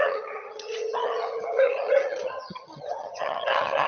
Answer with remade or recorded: remade